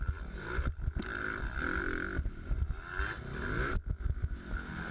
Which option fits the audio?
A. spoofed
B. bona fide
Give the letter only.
B